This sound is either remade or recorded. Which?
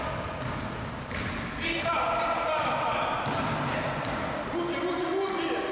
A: recorded